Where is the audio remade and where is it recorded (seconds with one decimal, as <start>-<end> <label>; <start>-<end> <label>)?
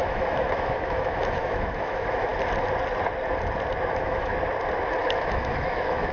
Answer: 0.0-2.3 remade; 2.3-3.9 recorded; 3.9-4.3 remade; 4.3-5.0 recorded; 5.0-6.1 remade